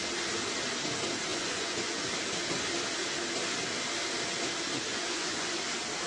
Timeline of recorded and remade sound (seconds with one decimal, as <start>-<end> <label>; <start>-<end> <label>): 0.0-1.3 recorded; 1.3-2.0 remade; 2.0-4.9 recorded; 4.9-5.5 remade; 5.5-6.1 recorded